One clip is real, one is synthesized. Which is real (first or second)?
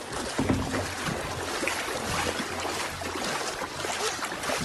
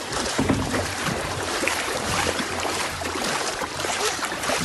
first